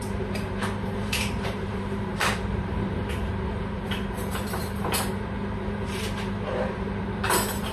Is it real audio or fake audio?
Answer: fake